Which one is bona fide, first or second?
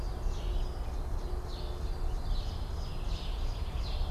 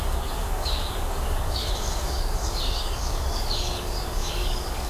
first